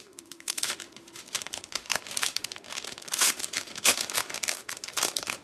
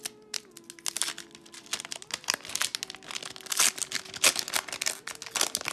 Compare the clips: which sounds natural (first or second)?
second